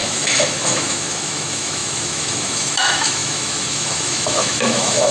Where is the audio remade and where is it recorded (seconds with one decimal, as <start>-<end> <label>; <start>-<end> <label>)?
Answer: 0.0-5.1 remade